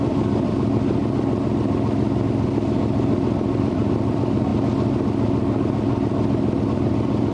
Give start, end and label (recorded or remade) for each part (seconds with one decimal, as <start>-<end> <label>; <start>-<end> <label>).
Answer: 0.0-1.0 remade; 1.0-3.6 recorded; 3.6-4.5 remade; 4.5-6.6 recorded; 6.6-7.3 remade